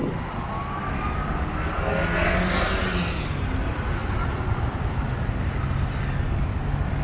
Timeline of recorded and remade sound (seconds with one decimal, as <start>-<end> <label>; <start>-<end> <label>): 0.0-4.0 recorded; 4.0-5.3 remade; 5.3-7.0 recorded